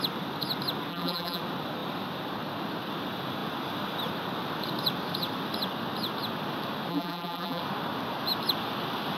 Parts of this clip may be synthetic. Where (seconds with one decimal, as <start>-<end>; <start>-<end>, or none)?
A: 0.9-1.4; 6.9-7.6